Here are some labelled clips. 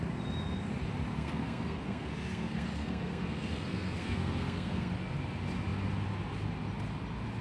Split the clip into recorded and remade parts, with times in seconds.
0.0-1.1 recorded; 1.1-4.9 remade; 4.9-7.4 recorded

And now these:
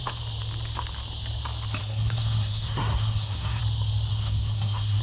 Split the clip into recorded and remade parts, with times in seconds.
0.0-1.8 recorded; 1.8-3.6 remade; 3.6-4.1 recorded; 4.1-5.0 remade

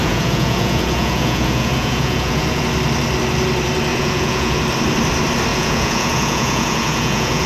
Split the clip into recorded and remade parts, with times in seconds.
0.0-2.6 remade; 2.6-3.9 recorded; 3.9-4.6 remade; 4.6-5.5 recorded; 5.5-7.5 remade

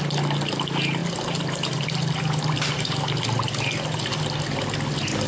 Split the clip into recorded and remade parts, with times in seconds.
0.0-5.3 recorded